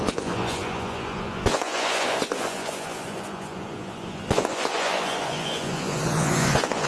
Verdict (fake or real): fake